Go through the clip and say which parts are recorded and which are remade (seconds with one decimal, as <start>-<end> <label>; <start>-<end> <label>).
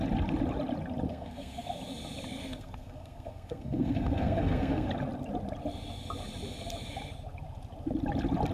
0.0-1.1 recorded; 1.1-1.7 remade; 1.7-2.4 recorded; 2.4-4.9 remade; 4.9-8.5 recorded